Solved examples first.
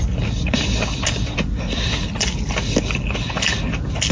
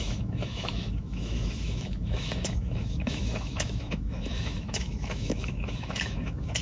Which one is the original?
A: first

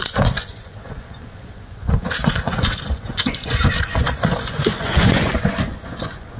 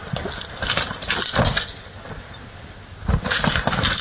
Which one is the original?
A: second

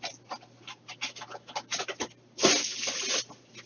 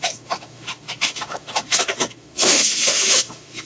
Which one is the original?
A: first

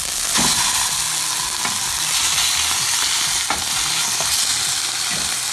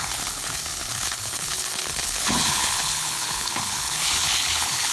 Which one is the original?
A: first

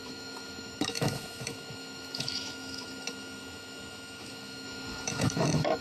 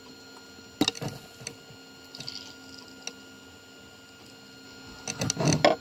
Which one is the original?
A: second